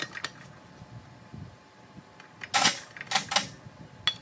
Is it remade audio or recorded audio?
recorded